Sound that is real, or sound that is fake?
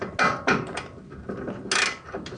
real